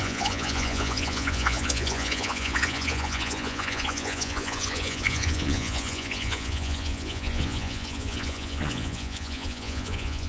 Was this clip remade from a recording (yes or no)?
yes